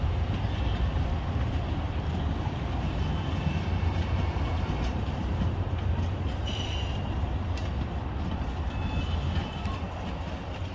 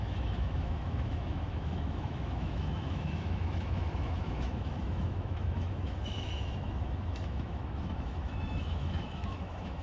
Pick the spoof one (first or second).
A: second